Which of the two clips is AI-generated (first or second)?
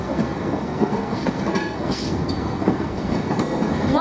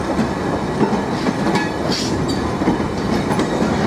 first